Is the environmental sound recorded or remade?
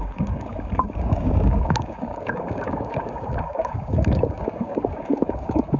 remade